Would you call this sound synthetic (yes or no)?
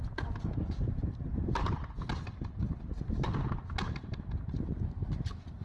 no